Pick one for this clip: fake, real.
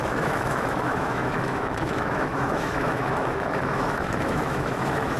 fake